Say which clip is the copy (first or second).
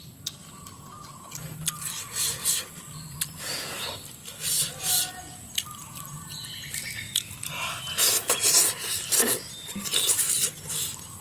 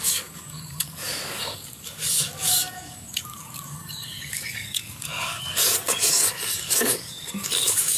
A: second